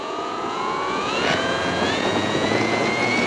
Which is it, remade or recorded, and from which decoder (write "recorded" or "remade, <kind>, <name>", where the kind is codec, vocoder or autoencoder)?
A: remade, vocoder, Vocos